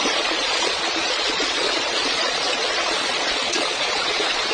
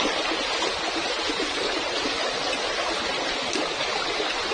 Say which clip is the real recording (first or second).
second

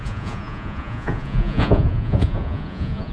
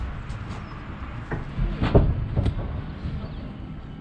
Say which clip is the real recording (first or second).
second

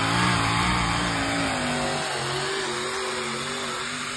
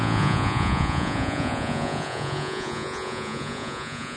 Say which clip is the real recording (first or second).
first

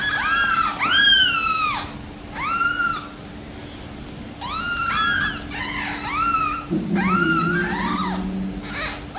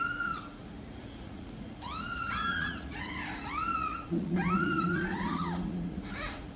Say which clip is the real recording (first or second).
first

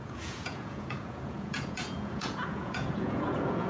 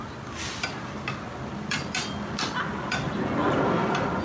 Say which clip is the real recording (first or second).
second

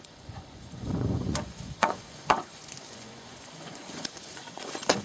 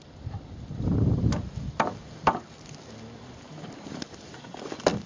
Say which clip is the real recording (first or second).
second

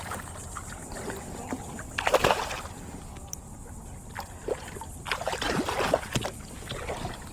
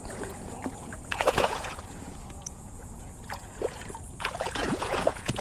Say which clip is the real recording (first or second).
first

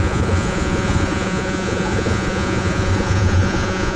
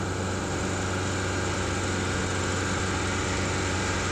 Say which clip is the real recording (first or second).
second